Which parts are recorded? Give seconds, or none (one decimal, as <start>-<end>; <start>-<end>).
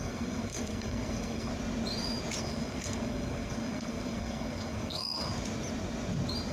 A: 1.5-2.4; 5.3-6.5